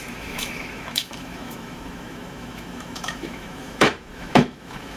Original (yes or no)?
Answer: no